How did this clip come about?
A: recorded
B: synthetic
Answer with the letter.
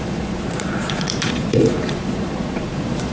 B